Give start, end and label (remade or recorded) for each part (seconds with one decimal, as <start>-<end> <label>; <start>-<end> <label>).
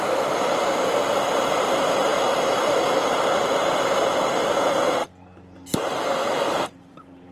0.0-2.1 remade; 2.1-3.6 recorded; 3.6-5.0 remade; 5.0-6.8 recorded; 6.8-7.3 remade